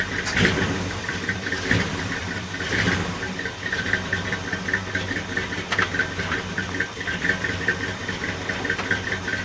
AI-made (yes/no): yes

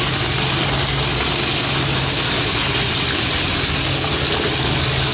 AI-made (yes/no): no